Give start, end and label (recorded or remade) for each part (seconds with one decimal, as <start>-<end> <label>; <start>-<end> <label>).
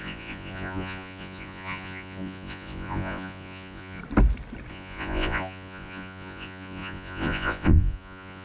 0.0-4.0 remade; 4.0-4.7 recorded; 4.7-8.4 remade